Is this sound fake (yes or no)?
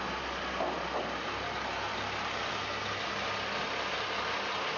no